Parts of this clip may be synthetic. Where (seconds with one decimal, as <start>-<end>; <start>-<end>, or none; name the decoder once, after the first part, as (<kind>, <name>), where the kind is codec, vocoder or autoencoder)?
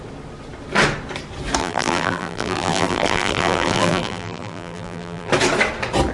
1.6-5.3 (vocoder, BigVGAN v2)